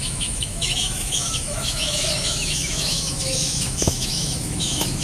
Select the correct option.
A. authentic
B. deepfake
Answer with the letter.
B